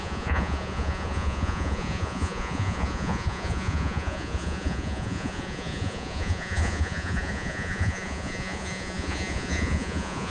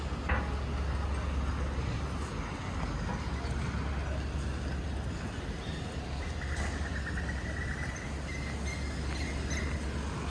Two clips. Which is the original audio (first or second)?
second